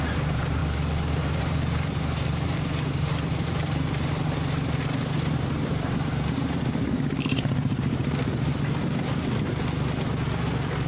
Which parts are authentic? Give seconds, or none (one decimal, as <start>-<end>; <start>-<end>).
0.6-1.1; 8.0-10.9